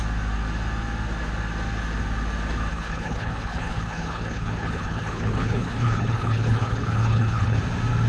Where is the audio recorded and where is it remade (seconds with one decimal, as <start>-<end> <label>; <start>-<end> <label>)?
0.0-2.7 recorded; 2.7-7.6 remade; 7.6-8.1 recorded